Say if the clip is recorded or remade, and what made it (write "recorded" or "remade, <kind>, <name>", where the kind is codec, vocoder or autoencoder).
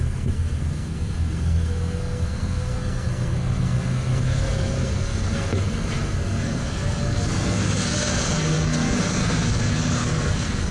remade, codec, SNAC